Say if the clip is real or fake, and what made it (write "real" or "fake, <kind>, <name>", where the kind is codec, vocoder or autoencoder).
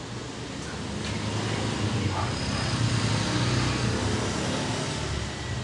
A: real